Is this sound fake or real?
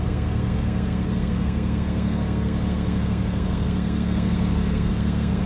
fake